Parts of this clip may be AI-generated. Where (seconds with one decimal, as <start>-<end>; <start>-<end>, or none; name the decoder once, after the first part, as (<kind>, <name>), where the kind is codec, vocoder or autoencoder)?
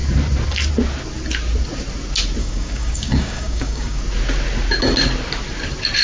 2.4-4.0 (codec, DAC)